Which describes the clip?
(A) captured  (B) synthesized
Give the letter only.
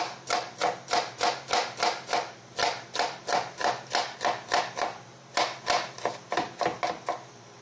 A